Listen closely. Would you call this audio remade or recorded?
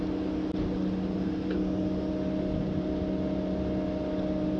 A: recorded